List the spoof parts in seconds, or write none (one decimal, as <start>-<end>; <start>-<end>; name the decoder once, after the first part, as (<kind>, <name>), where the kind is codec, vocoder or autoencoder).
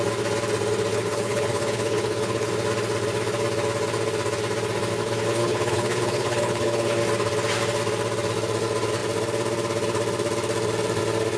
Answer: 0.9-2.5 (codec, HILCodec); 5.0-7.0